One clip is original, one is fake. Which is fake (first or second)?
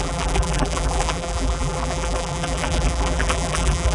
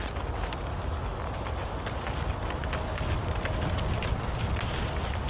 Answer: first